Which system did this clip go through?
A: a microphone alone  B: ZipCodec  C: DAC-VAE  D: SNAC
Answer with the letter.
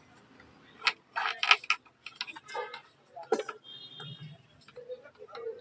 A